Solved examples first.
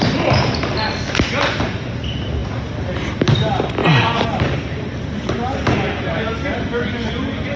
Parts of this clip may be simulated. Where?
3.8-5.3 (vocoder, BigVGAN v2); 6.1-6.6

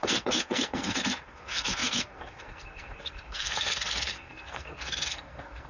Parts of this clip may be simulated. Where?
0.0-5.7 (codec, SNAC)

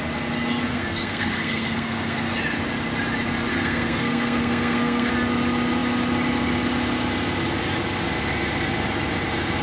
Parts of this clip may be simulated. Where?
0.7-2.3 (codec, SNAC); 3.5-5.1